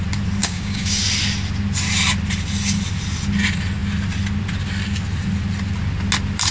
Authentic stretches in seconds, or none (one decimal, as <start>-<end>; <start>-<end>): 0.0-0.4; 1.0-6.5